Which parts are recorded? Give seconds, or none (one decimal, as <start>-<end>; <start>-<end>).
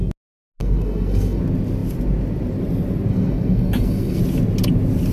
0.0-0.6; 1.4-3.1; 4.2-5.1